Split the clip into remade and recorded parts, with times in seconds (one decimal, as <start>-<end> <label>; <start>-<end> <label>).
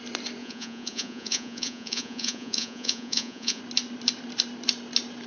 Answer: 0.0-0.4 recorded; 0.4-3.6 remade; 3.6-5.3 recorded